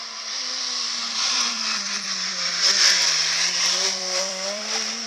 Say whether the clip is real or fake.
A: fake